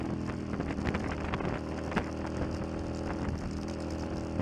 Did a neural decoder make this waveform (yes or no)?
no